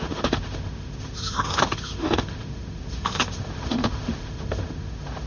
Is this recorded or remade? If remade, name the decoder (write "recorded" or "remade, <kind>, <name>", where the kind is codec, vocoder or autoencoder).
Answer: remade, autoencoder, DAC-VAE